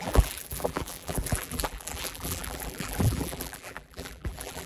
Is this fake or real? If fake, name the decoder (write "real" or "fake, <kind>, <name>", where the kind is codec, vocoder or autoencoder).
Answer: fake, vocoder, BigVGAN v2